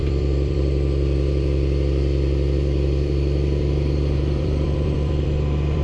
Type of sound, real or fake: fake